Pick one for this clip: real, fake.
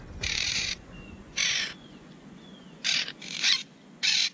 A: fake